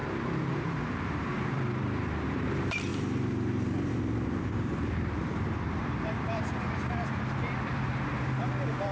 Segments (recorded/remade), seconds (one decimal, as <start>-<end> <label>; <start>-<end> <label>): 0.0-0.5 recorded; 0.5-8.9 remade